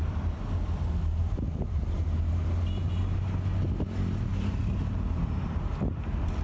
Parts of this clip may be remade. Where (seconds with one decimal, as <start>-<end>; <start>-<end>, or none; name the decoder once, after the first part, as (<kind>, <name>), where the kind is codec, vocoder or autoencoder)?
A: 1.2-3.0 (vocoder, BigVGAN v2)